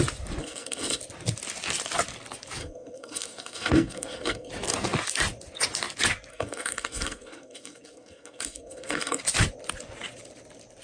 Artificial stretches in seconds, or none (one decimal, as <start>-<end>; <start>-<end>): 0.4-1.0; 2.6-4.5; 6.3-9.2

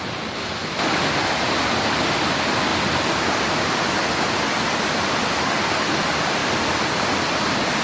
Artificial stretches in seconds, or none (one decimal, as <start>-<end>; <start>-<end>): none

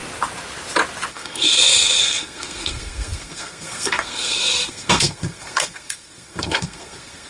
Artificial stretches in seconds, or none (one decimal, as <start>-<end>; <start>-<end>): 1.1-7.3

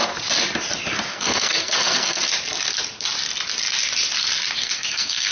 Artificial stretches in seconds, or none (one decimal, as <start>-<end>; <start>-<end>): 1.1-2.2; 4.6-5.3

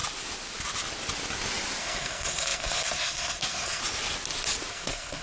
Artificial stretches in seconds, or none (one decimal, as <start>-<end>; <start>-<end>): 1.8-3.8; 4.7-5.2

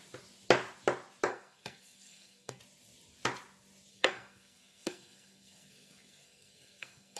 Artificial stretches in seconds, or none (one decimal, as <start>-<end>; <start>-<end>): 1.3-2.6; 3.9-7.2

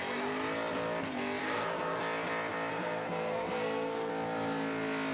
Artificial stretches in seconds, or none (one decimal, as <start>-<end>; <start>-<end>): 1.4-2.0; 2.7-4.1

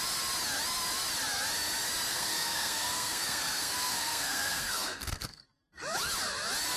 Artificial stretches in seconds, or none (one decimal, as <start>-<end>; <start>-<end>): 2.1-5.4